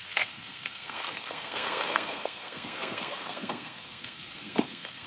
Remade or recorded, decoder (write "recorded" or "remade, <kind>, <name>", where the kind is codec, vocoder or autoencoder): remade, codec, SNAC